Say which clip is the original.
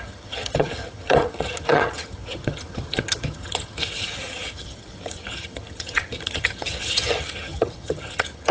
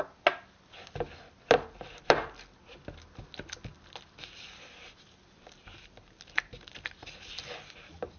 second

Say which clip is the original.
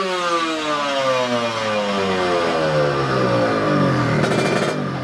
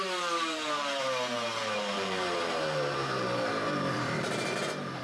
first